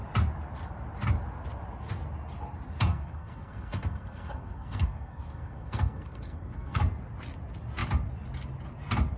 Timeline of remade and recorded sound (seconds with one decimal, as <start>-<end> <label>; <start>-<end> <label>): 0.0-2.9 recorded; 2.9-6.8 remade; 6.8-9.2 recorded